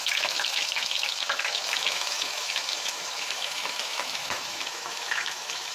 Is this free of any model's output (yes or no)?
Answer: no